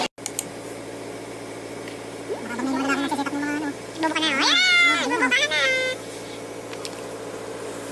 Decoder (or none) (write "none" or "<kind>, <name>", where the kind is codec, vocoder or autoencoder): none